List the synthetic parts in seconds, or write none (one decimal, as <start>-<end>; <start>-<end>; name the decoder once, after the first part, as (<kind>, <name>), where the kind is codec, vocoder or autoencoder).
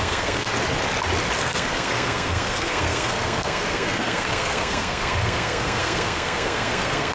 0.0-0.5 (codec, SNAC); 1.4-7.1